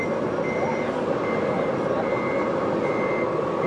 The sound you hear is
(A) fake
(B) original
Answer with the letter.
B